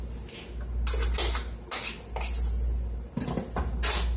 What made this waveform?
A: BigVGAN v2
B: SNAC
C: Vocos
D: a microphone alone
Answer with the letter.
D